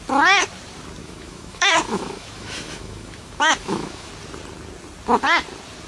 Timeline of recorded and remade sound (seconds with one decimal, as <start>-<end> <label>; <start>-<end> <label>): 0.0-1.0 recorded; 1.0-4.1 remade; 4.1-5.9 recorded